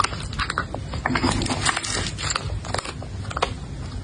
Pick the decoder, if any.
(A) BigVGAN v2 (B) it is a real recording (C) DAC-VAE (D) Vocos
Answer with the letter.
B